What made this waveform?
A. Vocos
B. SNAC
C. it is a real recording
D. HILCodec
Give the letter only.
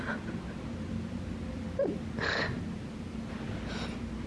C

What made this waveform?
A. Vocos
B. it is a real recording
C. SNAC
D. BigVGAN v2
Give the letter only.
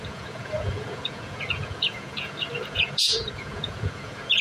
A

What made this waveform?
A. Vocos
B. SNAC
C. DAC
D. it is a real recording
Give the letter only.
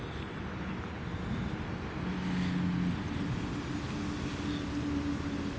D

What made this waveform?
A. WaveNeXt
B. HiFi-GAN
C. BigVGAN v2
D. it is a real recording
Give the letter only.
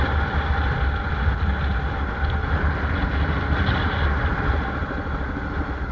D